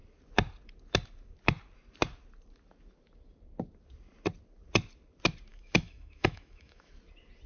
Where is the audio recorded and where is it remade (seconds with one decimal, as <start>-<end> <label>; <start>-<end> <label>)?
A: 0.0-5.5 recorded; 5.5-6.9 remade; 6.9-7.5 recorded